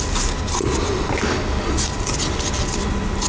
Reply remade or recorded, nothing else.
recorded